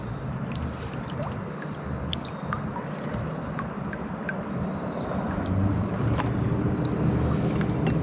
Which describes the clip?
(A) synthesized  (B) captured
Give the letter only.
B